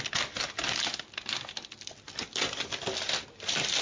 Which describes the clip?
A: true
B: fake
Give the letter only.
A